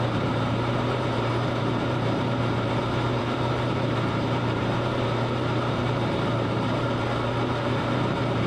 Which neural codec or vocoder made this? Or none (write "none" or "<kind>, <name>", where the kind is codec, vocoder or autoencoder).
vocoder, BigVGAN v2